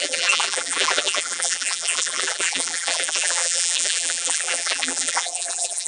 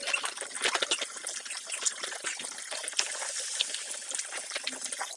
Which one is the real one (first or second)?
second